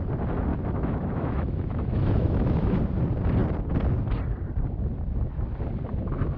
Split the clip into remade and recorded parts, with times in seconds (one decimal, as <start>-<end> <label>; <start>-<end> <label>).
0.0-0.5 recorded; 0.5-2.8 remade; 2.8-6.4 recorded